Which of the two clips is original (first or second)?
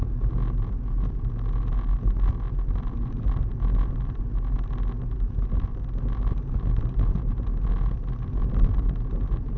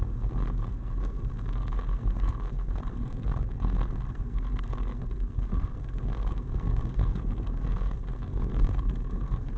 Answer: first